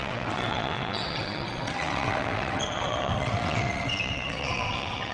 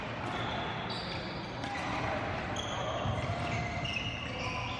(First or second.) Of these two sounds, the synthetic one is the first